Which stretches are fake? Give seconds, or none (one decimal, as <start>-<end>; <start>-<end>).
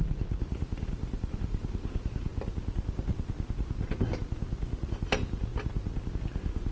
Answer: 0.0-2.3; 4.9-5.5; 6.1-6.7